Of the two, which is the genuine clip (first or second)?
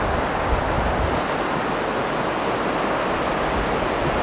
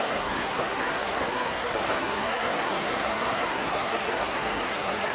first